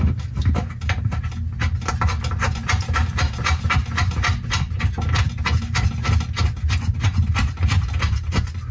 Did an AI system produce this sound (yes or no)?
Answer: no